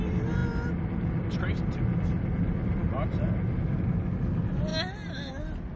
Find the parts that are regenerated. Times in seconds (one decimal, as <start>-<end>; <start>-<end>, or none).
none